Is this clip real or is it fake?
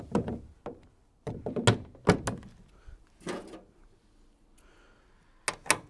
real